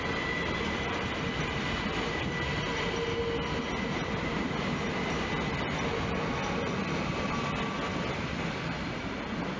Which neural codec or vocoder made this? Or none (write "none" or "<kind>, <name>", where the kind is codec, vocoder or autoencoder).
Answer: none